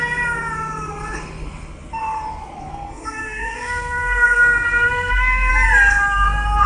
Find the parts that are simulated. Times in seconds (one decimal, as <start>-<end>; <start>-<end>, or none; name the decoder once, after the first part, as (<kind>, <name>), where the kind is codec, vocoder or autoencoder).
2.7-5.5 (codec, SNAC)